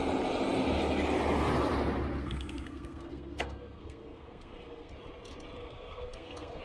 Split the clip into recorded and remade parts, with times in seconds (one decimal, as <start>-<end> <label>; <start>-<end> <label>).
0.0-2.2 recorded; 2.2-4.9 remade; 4.9-5.6 recorded; 5.6-6.6 remade